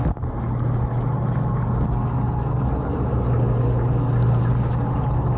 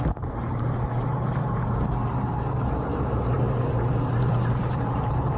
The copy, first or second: second